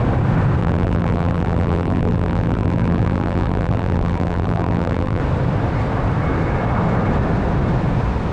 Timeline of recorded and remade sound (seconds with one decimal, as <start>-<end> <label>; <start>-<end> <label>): 0.0-0.6 recorded; 0.6-5.2 remade; 5.2-8.3 recorded